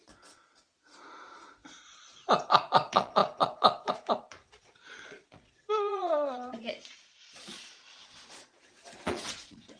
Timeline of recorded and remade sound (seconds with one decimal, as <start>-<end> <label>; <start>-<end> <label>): 0.0-9.8 remade